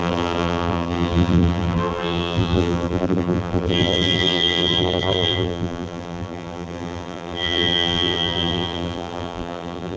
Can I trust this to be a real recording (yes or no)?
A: no